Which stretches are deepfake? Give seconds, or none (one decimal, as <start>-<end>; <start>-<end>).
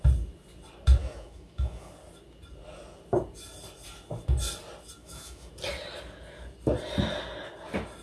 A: 1.0-1.9; 5.0-5.5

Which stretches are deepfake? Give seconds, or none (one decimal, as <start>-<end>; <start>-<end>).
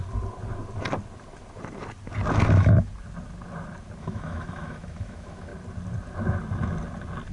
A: 2.5-2.9; 4.0-5.5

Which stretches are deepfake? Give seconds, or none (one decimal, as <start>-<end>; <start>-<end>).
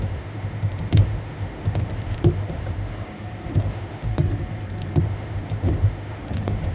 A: 0.0-2.9; 3.5-4.1; 5.0-6.7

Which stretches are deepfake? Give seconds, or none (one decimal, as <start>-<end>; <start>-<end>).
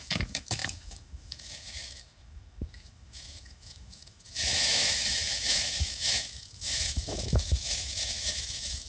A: 0.0-8.9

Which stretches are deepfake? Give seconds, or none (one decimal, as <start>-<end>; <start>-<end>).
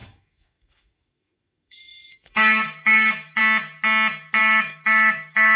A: 0.0-3.4; 4.4-5.6